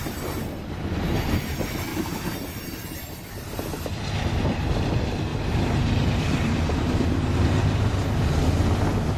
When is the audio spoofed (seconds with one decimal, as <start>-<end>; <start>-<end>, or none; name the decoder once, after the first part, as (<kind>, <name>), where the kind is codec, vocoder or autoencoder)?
1.9-3.0 (vocoder, BigVGAN v2); 5.3-7.9